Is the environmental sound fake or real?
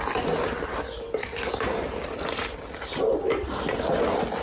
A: real